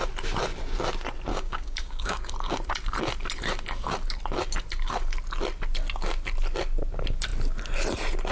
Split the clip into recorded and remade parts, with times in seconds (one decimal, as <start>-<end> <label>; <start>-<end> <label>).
0.0-1.3 recorded; 1.3-2.3 remade; 2.3-8.3 recorded